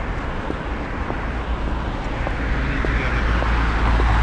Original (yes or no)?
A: yes